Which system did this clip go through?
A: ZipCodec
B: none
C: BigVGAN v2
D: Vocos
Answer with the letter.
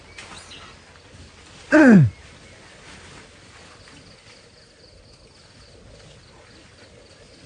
B